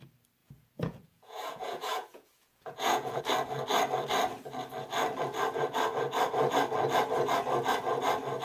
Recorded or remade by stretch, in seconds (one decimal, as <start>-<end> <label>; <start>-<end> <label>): 0.0-0.4 recorded; 0.4-3.2 remade; 3.2-8.4 recorded

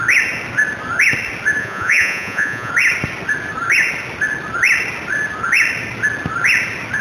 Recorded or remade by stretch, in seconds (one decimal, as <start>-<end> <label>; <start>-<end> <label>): 0.0-1.6 recorded; 1.6-2.7 remade; 2.7-7.0 recorded